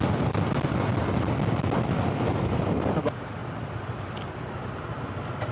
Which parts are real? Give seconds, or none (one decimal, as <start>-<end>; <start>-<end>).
0.0-5.5